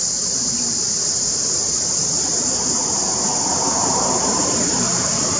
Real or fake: fake